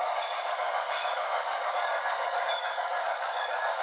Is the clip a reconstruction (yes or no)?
yes